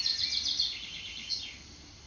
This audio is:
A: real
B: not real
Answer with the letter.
A